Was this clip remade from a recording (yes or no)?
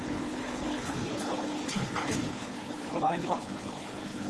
yes